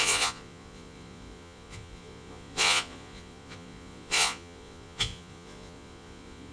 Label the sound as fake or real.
fake